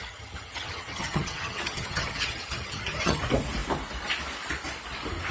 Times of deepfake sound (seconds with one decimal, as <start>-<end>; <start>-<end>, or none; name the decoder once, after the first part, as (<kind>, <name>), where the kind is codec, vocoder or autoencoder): 0.0-3.2 (vocoder, HiFi-GAN)